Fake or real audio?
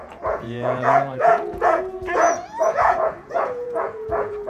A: fake